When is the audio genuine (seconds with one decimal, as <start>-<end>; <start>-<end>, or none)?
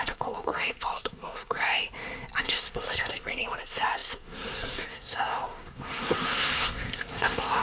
1.8-2.4